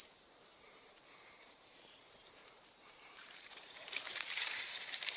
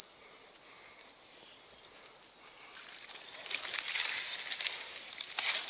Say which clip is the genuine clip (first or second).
second